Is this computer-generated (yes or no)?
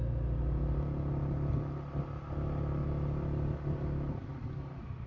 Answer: no